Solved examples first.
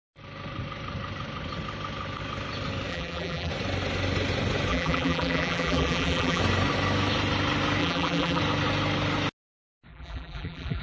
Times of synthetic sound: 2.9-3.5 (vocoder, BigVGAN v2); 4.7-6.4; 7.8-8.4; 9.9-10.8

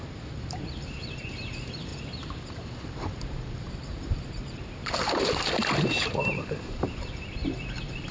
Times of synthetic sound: 0.0-7.4 (vocoder, BigVGAN v2)

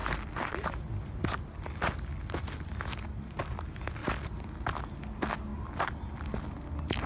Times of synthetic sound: 0.0-0.9 (vocoder, BigVGAN v2); 5.5-7.1

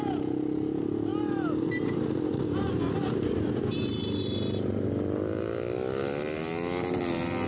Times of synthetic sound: 1.1-4.2 (vocoder, BigVGAN v2)

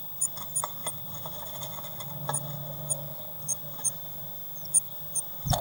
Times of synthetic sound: none

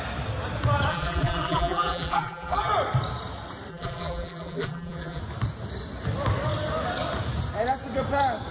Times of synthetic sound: 0.9-2.7 (vocoder, BigVGAN v2); 3.7-5.2

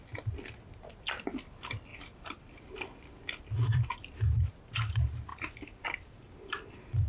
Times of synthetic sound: 1.9-4.5 (vocoder, BigVGAN v2); 5.3-7.1

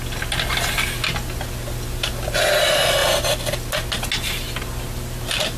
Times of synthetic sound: none